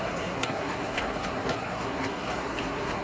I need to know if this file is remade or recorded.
remade